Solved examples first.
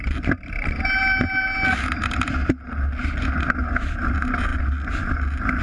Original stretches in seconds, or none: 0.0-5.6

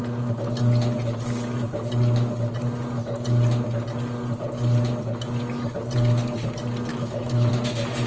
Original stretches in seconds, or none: 0.0-6.9; 7.5-8.1

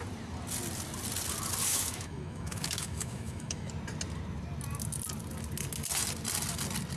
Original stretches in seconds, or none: 0.0-1.7; 3.7-7.0

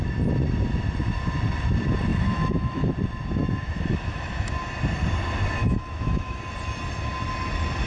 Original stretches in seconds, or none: 0.0-2.1; 2.9-3.4; 4.5-5.6; 6.4-7.9

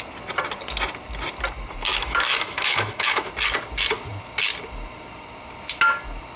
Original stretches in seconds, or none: 0.0-1.9; 3.3-6.4

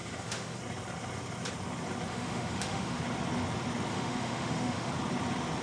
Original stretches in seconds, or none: 0.6-2.1; 3.0-3.9; 4.9-5.6

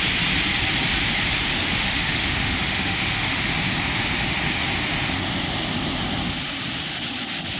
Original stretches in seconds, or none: 0.0-1.5; 3.5-7.6